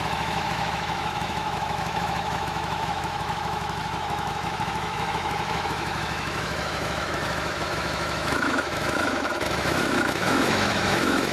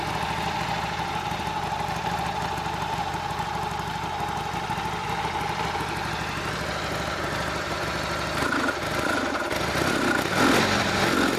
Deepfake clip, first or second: first